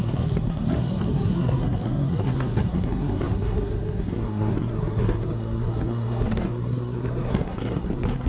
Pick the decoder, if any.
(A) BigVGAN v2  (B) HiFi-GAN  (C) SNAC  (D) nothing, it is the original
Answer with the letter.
C